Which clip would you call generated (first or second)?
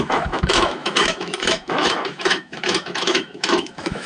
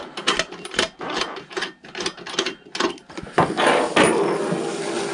first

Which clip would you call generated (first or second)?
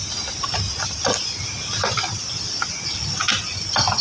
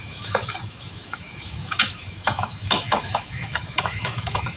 second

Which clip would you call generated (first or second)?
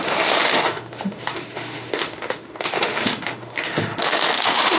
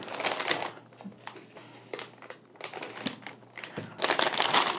first